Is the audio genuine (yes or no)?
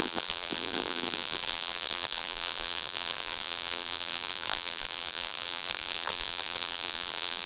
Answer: no